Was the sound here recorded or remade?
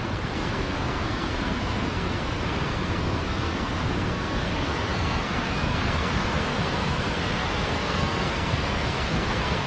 remade